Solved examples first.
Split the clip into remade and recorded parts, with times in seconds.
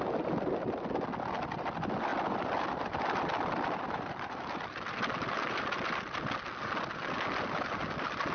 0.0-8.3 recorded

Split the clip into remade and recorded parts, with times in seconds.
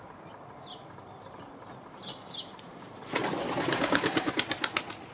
0.0-3.7 recorded; 3.7-4.3 remade; 4.3-5.1 recorded